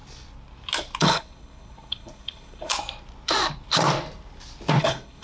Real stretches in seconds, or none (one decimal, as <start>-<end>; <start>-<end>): 0.0-1.0; 2.7-4.8